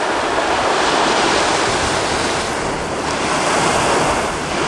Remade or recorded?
recorded